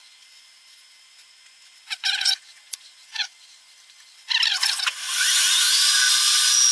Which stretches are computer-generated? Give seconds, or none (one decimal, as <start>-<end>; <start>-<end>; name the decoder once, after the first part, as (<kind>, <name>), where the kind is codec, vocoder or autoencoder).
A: 0.0-3.7 (vocoder, Vocos); 4.5-5.7